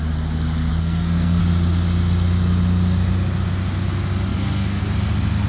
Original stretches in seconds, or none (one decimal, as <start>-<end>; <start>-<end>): 0.0-0.7; 1.4-4.3; 4.8-5.5